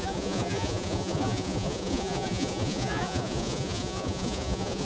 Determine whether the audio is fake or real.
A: fake